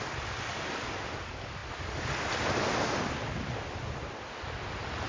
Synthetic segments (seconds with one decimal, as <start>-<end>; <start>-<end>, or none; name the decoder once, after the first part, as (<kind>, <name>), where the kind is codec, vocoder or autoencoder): none